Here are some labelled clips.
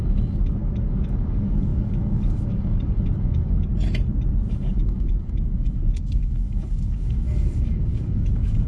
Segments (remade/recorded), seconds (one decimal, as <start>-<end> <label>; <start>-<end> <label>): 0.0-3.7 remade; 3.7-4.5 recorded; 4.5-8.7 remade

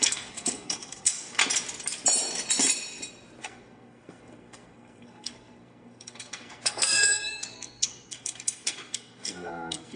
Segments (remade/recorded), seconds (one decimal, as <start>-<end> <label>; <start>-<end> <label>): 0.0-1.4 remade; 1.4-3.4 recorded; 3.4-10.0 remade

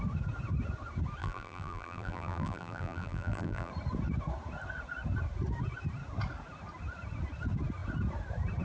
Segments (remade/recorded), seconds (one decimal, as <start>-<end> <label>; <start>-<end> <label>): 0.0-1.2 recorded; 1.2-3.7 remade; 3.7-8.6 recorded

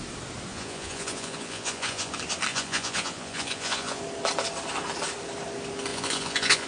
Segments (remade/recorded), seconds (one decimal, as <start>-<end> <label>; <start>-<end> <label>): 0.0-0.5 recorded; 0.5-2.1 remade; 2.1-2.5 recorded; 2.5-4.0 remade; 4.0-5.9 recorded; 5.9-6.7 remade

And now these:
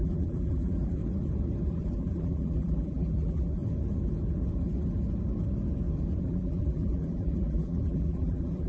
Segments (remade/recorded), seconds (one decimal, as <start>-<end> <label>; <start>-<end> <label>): 0.0-1.0 remade; 1.0-1.7 recorded; 1.7-3.6 remade; 3.6-6.2 recorded; 6.2-8.7 remade